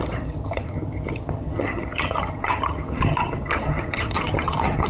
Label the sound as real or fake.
fake